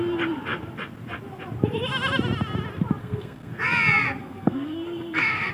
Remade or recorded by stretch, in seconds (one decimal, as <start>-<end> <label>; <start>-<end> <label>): 0.0-3.0 recorded; 3.0-3.5 remade; 3.5-4.2 recorded; 4.2-5.5 remade